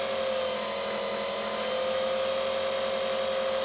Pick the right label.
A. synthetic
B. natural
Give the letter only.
B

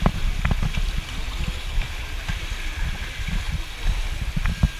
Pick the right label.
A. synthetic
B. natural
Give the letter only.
B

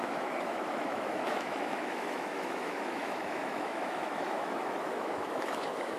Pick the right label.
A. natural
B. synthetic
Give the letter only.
B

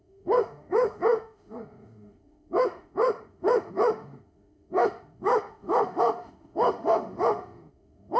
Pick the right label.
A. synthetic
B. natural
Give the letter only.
A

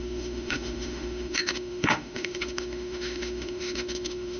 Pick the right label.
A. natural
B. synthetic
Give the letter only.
B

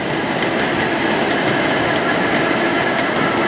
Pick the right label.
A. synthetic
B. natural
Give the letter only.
B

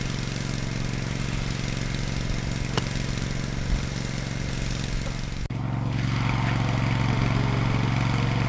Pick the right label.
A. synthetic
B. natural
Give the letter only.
B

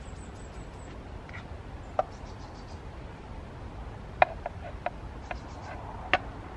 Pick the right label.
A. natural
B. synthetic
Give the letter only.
A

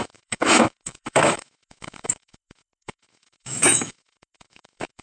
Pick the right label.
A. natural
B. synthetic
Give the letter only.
B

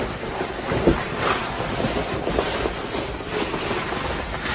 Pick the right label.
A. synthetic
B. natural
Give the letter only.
B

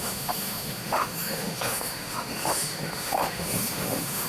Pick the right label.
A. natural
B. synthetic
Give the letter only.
B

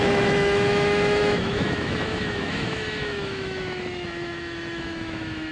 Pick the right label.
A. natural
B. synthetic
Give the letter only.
B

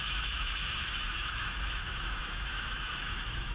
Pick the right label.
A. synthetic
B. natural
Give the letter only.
A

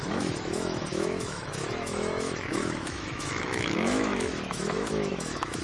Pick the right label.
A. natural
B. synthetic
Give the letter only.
B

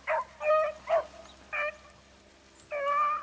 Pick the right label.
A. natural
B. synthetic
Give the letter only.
A